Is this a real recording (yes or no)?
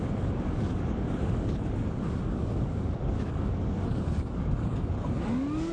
no